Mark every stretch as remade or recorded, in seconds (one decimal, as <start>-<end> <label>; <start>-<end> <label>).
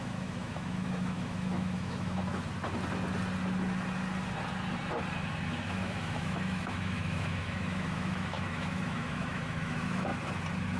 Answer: 0.0-2.2 remade; 2.2-5.7 recorded; 5.7-10.1 remade; 10.1-10.8 recorded